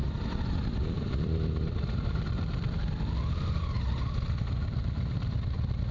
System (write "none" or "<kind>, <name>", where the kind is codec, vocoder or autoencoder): vocoder, BigVGAN v2